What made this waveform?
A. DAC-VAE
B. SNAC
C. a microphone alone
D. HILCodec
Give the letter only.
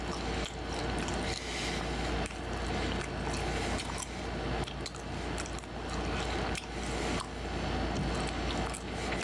C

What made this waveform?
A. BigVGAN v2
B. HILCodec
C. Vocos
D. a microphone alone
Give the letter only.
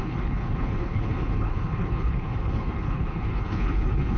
B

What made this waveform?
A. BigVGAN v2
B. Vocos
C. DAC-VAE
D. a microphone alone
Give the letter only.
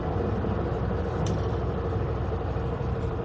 A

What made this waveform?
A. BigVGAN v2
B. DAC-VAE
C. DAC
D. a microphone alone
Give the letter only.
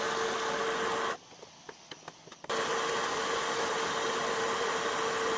D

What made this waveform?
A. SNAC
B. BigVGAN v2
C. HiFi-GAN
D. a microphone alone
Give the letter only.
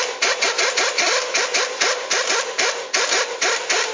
D